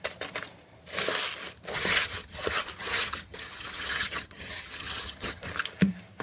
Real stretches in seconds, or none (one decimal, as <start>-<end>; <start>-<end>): 0.0-1.7; 5.4-6.2